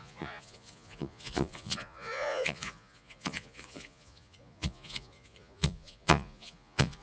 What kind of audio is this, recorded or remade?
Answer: remade